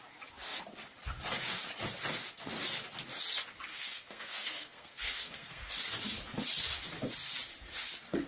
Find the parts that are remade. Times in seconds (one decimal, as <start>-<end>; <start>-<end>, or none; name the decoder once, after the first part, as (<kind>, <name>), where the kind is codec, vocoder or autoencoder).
3.7-5.7 (codec, SNAC)